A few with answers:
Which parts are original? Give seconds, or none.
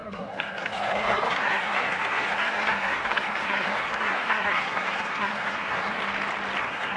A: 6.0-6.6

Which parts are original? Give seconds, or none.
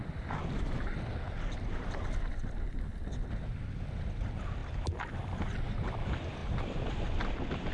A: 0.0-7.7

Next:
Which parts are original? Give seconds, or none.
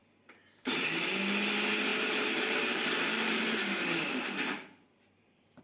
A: 0.8-1.9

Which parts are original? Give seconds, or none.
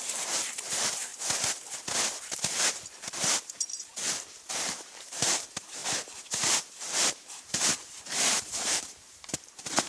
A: 1.1-3.3; 3.9-4.5; 5.8-6.7